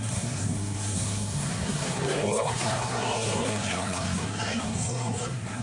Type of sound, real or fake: fake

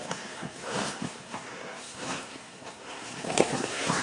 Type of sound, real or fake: fake